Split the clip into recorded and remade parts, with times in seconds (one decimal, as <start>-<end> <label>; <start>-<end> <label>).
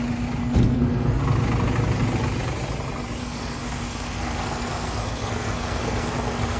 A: 0.0-0.4 recorded; 0.4-1.2 remade; 1.2-3.2 recorded; 3.2-6.6 remade